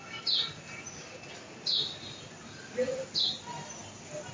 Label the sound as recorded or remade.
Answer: recorded